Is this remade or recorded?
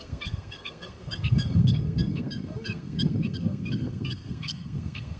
remade